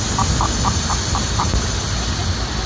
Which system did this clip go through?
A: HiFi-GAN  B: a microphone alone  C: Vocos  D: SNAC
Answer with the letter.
B